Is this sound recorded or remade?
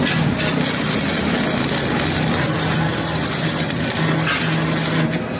recorded